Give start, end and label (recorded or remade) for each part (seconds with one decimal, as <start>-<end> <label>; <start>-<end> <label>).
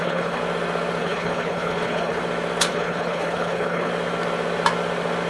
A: 0.0-0.4 remade; 0.4-1.0 recorded; 1.0-2.2 remade; 2.2-2.7 recorded; 2.7-3.9 remade; 3.9-5.3 recorded